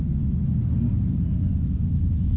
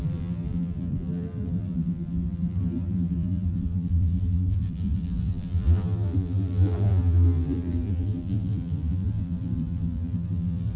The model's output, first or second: second